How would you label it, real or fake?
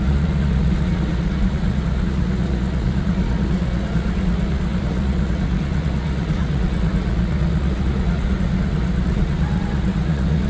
fake